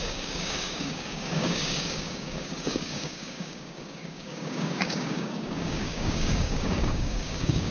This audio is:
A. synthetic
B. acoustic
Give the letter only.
A